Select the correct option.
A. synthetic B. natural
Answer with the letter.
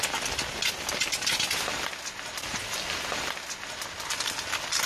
B